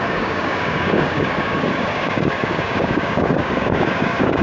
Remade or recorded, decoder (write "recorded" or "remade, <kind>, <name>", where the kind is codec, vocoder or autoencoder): remade, codec, DAC